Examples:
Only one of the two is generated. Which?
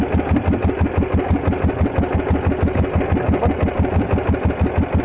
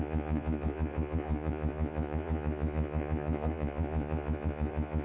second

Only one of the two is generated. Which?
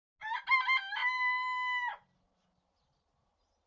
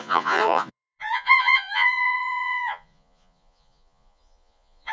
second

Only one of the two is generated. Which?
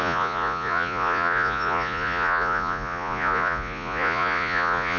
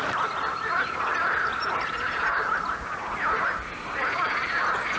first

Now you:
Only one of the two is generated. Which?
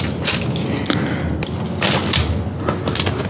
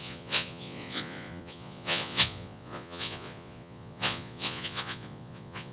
second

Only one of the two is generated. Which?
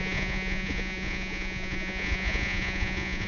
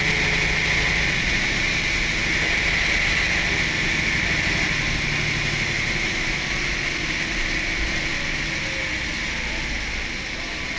first